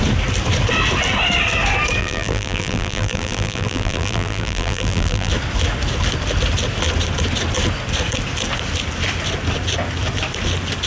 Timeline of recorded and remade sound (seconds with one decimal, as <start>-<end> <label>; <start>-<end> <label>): 0.0-2.0 recorded; 2.0-5.3 remade; 5.3-10.9 recorded